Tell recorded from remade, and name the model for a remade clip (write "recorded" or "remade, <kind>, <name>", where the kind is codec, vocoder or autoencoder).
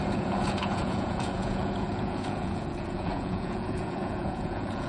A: remade, vocoder, Vocos